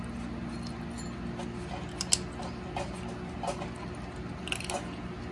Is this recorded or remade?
recorded